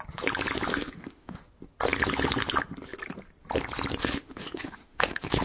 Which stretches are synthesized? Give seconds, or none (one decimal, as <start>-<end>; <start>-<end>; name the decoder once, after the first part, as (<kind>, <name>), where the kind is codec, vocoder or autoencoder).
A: 0.7-1.4 (autoencoder, DAC-VAE); 4.0-5.4